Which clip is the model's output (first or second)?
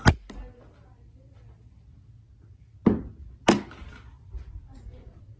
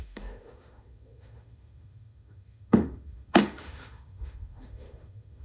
second